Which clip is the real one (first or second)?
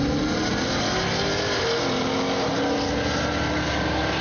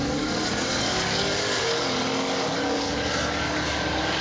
first